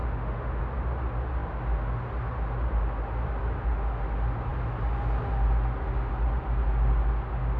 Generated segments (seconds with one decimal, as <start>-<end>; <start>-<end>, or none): 0.0-0.6